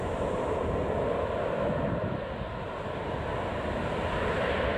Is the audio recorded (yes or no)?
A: yes